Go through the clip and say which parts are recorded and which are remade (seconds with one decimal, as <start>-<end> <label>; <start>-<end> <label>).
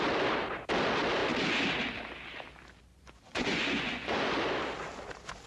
0.0-2.9 recorded; 2.9-4.3 remade; 4.3-5.5 recorded